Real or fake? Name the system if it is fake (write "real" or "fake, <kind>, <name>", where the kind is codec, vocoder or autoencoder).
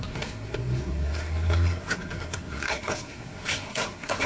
fake, codec, SNAC